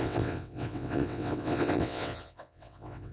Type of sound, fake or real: fake